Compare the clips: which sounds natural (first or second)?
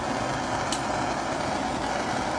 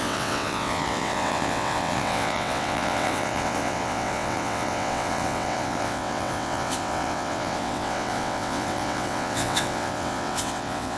first